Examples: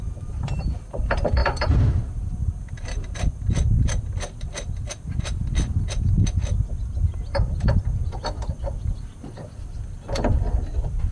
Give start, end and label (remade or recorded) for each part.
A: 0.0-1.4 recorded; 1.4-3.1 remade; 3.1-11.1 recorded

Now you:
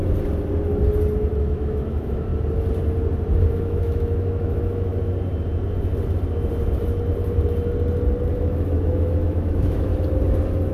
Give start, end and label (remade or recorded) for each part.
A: 0.0-1.3 recorded; 1.3-2.3 remade; 2.3-3.5 recorded; 3.5-4.9 remade; 4.9-8.3 recorded; 8.3-9.9 remade; 9.9-10.7 recorded

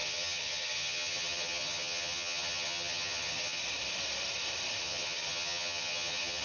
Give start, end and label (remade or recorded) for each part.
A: 0.0-3.6 remade; 3.6-4.8 recorded; 4.8-6.4 remade

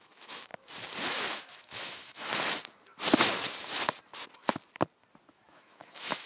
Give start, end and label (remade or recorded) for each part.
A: 0.0-0.5 remade; 0.5-1.1 recorded; 1.1-2.3 remade; 2.3-5.3 recorded; 5.3-6.3 remade

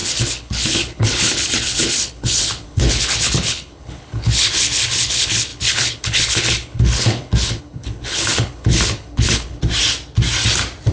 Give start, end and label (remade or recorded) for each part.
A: 0.0-9.6 remade; 9.6-10.9 recorded